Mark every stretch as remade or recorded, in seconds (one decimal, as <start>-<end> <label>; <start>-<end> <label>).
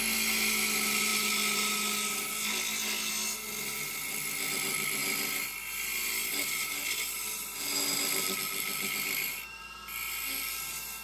0.0-11.0 recorded